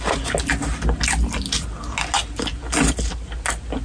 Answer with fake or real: real